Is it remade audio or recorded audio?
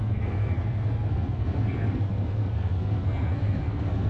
remade